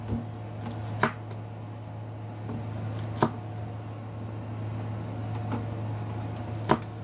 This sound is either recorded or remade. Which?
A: recorded